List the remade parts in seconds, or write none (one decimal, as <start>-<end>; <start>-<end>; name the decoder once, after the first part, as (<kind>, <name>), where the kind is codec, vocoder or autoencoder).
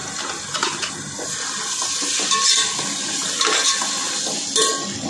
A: none